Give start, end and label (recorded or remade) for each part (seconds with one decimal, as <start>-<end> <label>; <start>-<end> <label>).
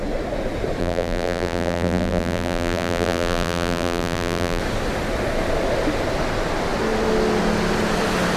0.0-0.8 recorded; 0.8-4.6 remade; 4.6-8.4 recorded